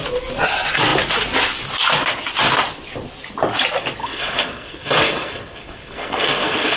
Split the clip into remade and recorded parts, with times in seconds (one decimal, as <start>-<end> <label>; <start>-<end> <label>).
0.0-4.0 recorded; 4.0-6.8 remade